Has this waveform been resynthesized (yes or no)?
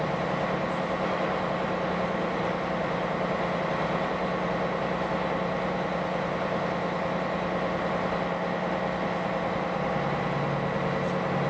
no